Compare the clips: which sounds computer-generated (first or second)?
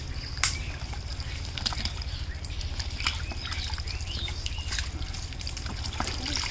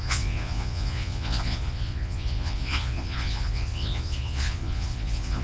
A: second